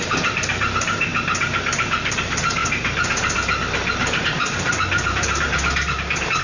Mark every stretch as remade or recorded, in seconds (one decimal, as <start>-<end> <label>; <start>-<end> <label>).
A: 0.0-1.1 remade; 1.1-1.7 recorded; 1.7-6.4 remade